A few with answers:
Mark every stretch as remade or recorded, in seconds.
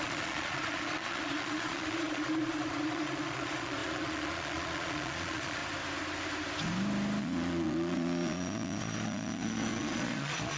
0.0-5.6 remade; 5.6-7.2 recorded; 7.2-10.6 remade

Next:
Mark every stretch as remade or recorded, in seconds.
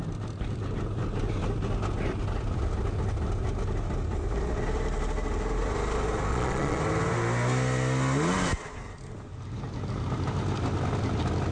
0.0-6.3 recorded; 6.3-6.8 remade; 6.8-11.5 recorded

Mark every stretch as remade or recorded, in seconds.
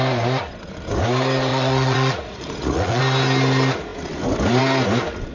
0.0-1.5 recorded; 1.5-3.0 remade; 3.0-5.3 recorded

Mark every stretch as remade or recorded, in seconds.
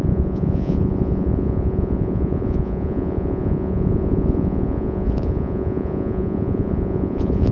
0.0-7.5 remade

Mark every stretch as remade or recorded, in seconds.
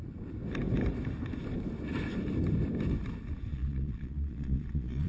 0.0-3.5 recorded; 3.5-5.1 remade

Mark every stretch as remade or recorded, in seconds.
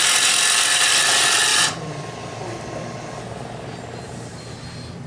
0.0-5.1 recorded